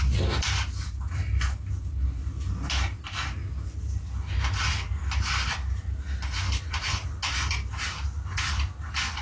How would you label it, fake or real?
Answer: real